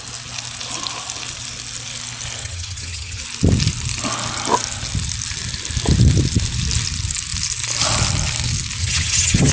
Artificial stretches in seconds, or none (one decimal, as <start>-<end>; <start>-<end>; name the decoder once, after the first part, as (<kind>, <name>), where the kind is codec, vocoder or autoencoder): 2.4-3.2 (vocoder, HiFi-GAN); 8.8-9.5